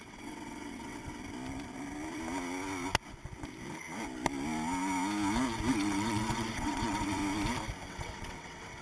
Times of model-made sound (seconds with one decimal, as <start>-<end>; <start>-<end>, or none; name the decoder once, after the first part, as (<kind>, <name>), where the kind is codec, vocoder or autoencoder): 0.0-1.1 (vocoder, WaveNeXt); 5.7-7.2; 7.9-8.8